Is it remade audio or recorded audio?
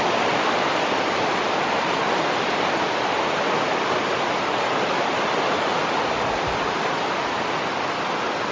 recorded